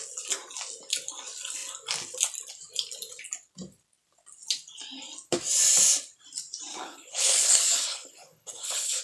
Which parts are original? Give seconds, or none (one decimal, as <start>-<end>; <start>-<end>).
0.0-6.7; 7.5-7.9